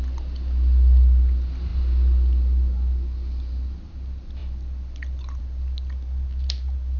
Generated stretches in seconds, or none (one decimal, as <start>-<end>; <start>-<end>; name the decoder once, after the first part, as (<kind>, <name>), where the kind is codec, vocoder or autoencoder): none